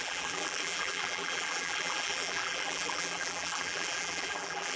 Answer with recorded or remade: remade